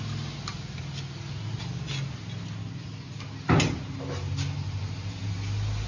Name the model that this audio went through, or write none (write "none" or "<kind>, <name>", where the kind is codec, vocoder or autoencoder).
none